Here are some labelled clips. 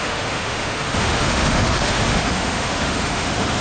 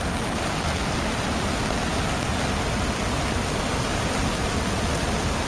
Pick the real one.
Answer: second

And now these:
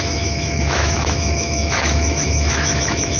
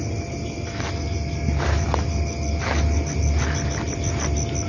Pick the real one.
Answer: second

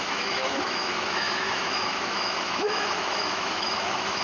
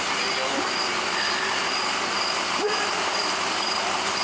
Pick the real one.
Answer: second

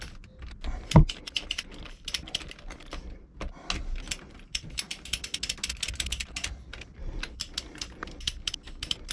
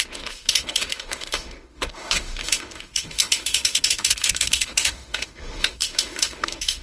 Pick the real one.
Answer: first